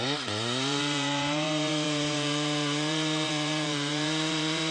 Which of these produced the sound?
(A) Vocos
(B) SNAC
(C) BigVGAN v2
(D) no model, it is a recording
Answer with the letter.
C